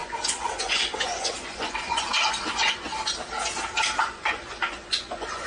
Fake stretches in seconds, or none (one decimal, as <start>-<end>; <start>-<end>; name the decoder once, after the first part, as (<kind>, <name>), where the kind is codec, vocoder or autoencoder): 0.0-2.9 (vocoder, Vocos); 4.0-5.5

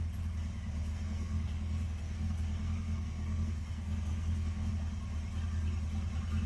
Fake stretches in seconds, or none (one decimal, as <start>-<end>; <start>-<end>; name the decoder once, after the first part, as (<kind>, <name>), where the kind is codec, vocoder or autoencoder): 0.9-4.7 (codec, SNAC)

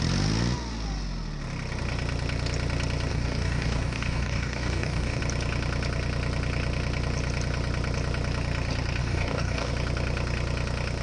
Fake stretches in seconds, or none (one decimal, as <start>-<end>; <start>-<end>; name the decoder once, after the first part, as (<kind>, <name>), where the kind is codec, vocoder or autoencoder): 3.1-5.2 (codec, DAC); 9.0-9.7

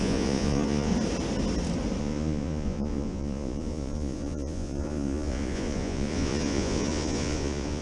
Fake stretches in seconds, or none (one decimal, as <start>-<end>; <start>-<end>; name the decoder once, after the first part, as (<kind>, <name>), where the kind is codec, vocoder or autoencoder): 0.0-0.9 (vocoder, Vocos); 2.0-7.8

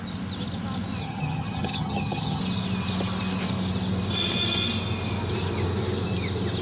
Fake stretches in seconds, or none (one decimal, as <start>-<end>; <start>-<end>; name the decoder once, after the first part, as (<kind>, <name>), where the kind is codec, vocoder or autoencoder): 1.0-2.4 (vocoder, HiFi-GAN)

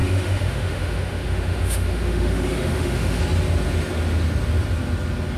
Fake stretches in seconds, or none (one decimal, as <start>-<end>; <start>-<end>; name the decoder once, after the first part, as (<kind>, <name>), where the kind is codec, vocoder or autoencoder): 0.0-3.2 (autoencoder, DAC-VAE)

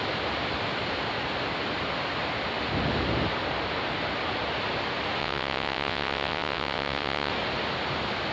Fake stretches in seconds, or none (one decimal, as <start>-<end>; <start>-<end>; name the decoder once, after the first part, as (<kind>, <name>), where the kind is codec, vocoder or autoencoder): 5.2-7.3 (vocoder, WaveNeXt)

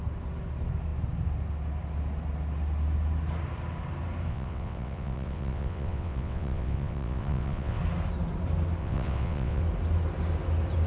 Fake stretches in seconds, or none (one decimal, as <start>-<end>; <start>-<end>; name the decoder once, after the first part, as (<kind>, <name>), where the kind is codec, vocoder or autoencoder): 4.3-7.8 (vocoder, WaveNeXt); 8.8-9.6